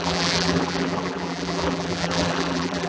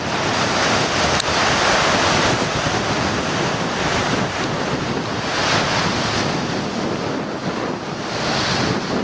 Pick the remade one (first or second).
first